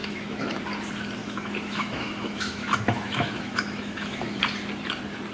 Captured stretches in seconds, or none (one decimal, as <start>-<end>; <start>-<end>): 0.6-1.2; 4.4-5.3